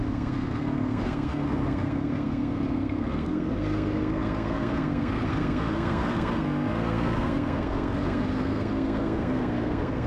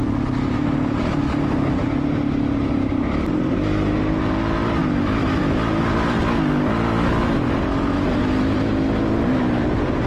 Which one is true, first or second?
second